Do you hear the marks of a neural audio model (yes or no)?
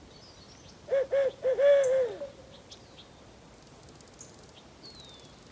no